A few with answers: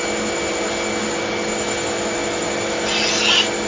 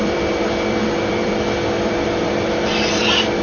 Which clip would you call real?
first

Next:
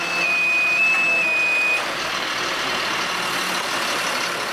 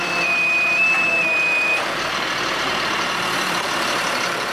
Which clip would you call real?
first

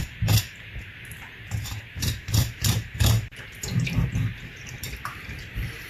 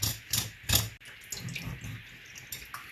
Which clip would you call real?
second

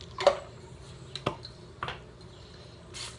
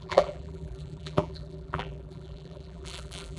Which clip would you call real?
first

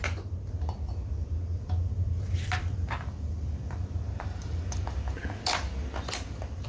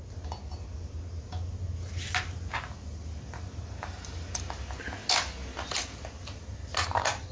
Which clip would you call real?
second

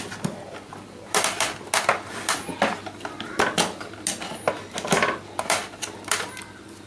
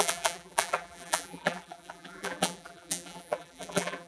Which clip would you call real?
first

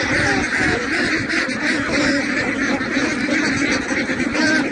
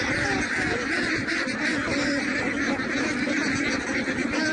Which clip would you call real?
second